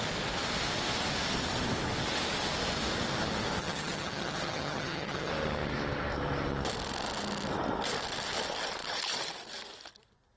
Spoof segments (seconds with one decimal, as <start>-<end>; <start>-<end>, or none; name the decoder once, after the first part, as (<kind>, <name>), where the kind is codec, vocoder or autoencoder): 3.6-5.3 (vocoder, HiFi-GAN)